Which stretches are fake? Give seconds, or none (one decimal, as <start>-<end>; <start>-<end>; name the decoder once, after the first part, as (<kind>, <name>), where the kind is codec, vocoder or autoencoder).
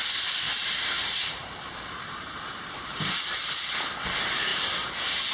0.6-3.3 (vocoder, BigVGAN v2)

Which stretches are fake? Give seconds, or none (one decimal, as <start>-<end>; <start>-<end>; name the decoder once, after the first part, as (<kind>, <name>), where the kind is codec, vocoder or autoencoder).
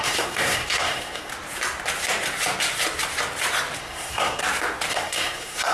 0.0-1.3 (codec, SNAC); 3.8-4.4; 4.9-5.7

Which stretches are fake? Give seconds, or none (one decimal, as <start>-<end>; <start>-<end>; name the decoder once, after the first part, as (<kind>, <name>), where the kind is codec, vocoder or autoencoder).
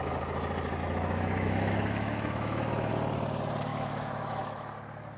0.8-2.9 (autoencoder, DAC-VAE); 3.7-4.7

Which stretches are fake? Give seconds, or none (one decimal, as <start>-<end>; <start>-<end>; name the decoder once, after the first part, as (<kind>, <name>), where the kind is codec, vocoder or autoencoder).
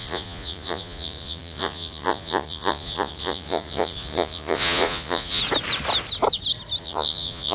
0.0-5.4 (vocoder, Vocos); 6.8-7.5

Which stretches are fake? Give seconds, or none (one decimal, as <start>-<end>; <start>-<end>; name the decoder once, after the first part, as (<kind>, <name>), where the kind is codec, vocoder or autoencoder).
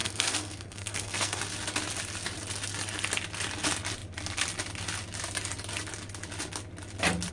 0.0-1.4 (codec, SNAC)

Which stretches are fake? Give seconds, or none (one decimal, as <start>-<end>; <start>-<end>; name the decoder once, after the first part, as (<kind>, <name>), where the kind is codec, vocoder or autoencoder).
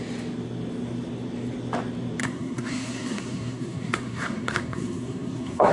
2.2-5.7 (codec, SNAC)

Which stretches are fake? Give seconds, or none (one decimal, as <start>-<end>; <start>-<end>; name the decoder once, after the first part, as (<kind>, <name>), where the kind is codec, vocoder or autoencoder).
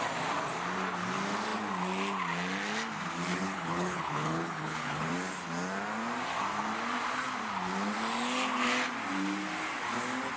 3.3-5.1 (codec, HILCodec)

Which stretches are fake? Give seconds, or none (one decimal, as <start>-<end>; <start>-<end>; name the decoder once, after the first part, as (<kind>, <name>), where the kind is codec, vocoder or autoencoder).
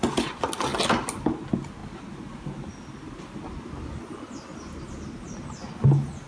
none